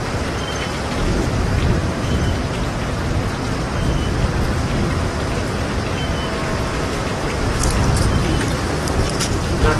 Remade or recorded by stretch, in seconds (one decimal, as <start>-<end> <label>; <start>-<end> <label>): 0.0-9.8 recorded